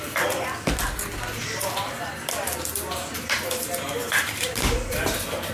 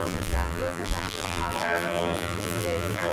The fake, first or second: second